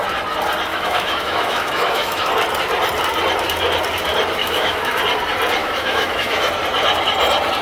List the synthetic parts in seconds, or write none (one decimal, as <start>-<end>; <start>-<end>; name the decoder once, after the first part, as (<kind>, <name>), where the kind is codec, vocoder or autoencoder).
0.7-2.3 (autoencoder, DAC-VAE); 4.4-5.0; 5.6-6.5